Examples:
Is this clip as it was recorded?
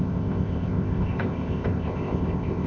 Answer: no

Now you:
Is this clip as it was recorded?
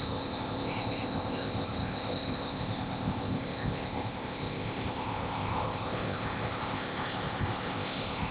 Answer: no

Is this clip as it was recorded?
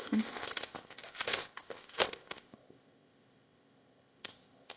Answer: no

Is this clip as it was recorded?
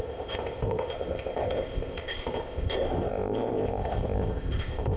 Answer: no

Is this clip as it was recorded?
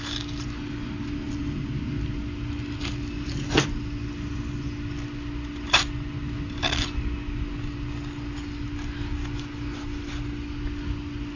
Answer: yes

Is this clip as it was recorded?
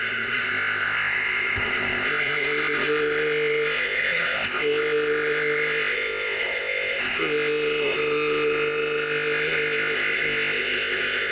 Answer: no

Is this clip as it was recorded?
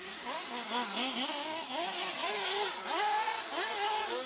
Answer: yes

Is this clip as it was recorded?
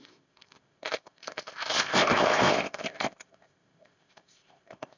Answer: no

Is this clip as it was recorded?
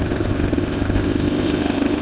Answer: no